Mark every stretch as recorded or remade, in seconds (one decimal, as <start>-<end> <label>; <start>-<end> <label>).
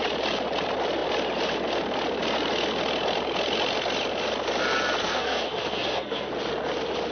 0.0-5.0 recorded; 5.0-6.3 remade; 6.3-7.1 recorded